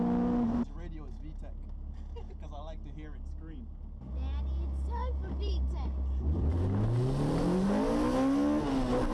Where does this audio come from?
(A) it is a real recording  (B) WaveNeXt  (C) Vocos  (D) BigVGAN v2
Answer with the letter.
A